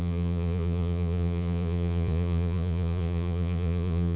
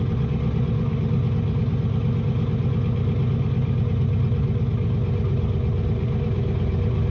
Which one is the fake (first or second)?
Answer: first